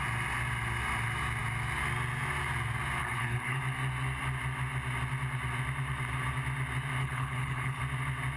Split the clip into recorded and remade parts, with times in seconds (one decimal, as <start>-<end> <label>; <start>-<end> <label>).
0.0-3.0 recorded; 3.0-3.6 remade; 3.6-7.0 recorded; 7.0-7.8 remade; 7.8-8.4 recorded